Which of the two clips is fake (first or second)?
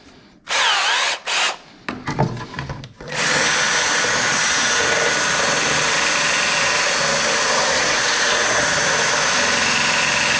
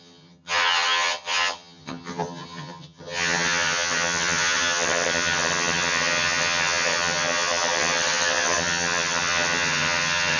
second